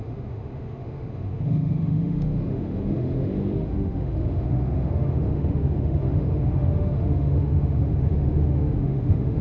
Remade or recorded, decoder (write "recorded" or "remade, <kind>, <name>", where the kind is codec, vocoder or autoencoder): remade, autoencoder, DAC-VAE